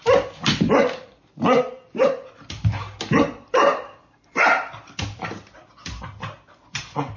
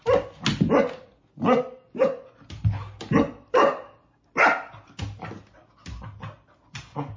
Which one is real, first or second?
second